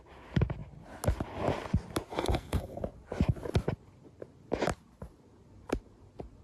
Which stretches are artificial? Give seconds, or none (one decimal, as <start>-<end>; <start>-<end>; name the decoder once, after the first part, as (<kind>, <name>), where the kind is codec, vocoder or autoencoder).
2.1-2.8 (codec, SNAC)